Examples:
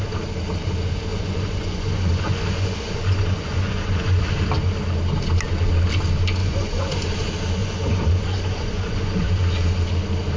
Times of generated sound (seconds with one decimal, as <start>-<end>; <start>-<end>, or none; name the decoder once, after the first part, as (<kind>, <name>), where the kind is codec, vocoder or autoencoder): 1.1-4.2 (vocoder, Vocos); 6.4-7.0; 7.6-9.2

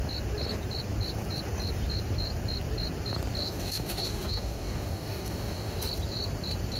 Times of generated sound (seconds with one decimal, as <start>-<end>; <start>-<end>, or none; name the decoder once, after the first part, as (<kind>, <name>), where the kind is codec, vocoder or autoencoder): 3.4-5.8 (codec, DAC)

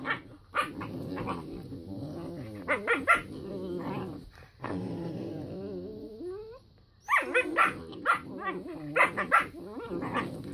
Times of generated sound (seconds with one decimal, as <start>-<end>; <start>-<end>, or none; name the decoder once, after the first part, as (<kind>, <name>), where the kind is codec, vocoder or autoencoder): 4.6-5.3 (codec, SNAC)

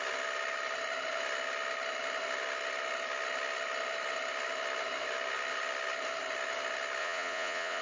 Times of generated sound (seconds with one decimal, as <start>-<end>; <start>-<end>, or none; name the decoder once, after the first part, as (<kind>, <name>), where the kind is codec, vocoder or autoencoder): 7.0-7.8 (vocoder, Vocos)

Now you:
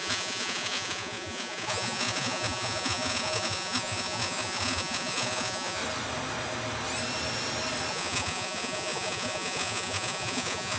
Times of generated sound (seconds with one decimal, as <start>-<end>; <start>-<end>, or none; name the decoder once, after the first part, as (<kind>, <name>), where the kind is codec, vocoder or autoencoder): 0.0-5.8 (vocoder, Vocos); 7.9-10.8